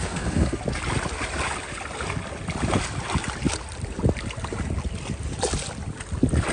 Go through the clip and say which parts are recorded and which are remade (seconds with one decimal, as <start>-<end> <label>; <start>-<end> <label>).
0.0-0.6 remade; 0.6-6.5 recorded